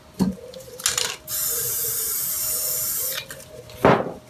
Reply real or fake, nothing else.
real